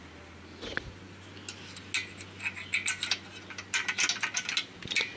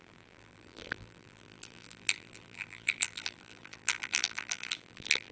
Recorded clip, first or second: first